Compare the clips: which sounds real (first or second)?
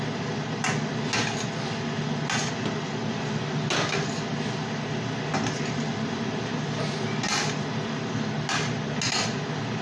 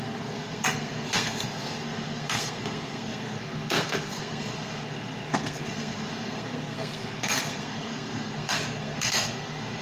first